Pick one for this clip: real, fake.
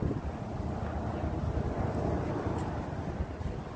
real